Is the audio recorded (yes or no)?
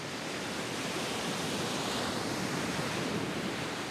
yes